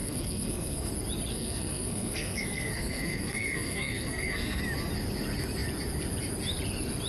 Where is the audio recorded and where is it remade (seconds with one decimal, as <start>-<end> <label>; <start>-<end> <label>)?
0.0-0.9 remade; 0.9-1.3 recorded; 1.3-4.6 remade; 4.6-7.1 recorded